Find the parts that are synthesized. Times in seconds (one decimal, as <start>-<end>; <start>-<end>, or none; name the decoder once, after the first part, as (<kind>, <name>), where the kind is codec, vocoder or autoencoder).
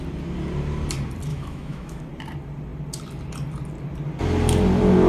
1.3-2.0 (autoencoder, DAC-VAE)